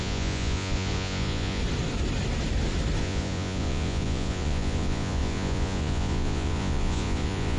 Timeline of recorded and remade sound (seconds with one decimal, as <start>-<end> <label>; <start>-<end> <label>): 0.0-1.6 remade; 1.6-3.0 recorded; 3.0-7.6 remade